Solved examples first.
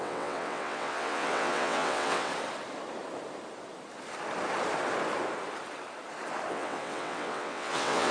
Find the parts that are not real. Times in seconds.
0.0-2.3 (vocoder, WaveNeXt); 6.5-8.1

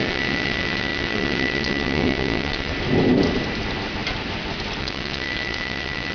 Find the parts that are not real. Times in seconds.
0.0-2.7 (vocoder, WaveNeXt); 4.8-6.1

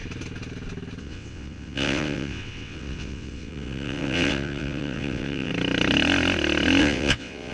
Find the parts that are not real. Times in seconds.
1.0-5.5 (vocoder, WaveNeXt); 6.8-7.5